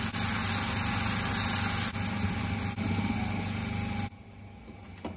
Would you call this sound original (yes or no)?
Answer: yes